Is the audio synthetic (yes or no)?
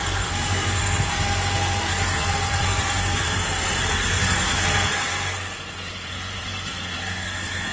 yes